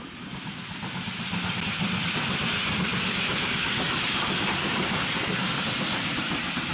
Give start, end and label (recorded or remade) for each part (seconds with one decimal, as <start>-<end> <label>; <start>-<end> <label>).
0.0-6.7 recorded

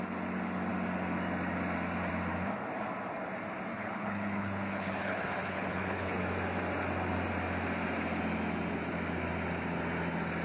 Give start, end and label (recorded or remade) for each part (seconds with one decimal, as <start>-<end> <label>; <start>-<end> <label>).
0.0-3.7 recorded; 3.7-6.2 remade; 6.2-10.4 recorded

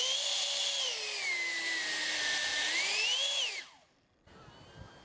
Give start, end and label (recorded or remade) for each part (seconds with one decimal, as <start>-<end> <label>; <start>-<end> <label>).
0.0-5.0 recorded

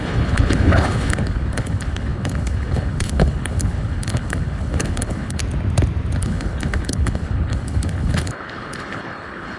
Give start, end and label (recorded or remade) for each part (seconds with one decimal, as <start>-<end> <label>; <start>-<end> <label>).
0.0-5.4 remade; 5.4-6.2 recorded; 6.2-9.6 remade

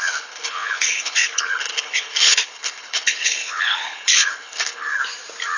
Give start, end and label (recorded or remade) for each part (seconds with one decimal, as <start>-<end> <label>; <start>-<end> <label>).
0.0-5.0 remade; 5.0-5.6 recorded

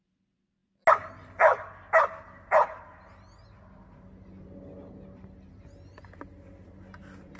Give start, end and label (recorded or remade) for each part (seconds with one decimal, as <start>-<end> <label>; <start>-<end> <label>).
0.0-7.4 recorded

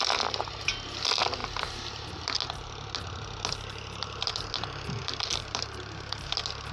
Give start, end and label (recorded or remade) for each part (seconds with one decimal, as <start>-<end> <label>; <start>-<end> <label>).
0.0-6.7 recorded

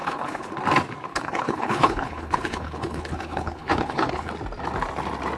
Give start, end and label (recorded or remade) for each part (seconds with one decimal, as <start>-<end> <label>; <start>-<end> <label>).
0.0-0.5 remade; 0.5-1.1 recorded; 1.1-4.3 remade; 4.3-5.4 recorded